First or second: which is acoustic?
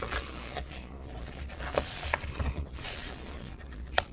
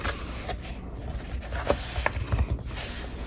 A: second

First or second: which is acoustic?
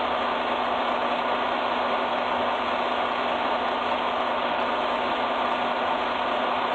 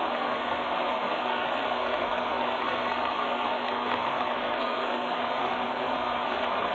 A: first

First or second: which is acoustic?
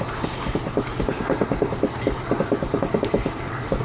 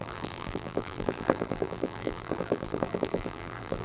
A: first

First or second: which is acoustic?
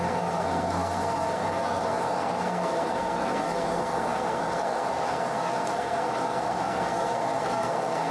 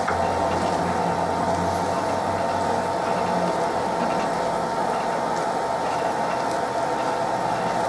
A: second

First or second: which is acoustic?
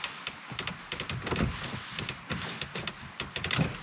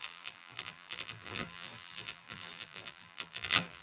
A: first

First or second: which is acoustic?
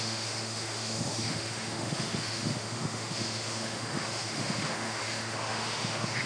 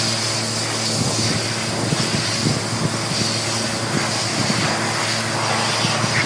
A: second